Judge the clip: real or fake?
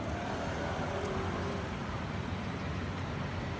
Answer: real